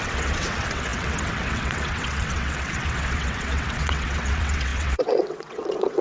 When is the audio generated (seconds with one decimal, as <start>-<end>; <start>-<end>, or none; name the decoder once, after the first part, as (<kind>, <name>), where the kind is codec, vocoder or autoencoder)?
0.0-6.0 (vocoder, WaveNeXt)